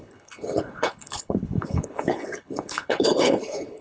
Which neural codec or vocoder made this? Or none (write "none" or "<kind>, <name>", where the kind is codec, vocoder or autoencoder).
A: codec, HILCodec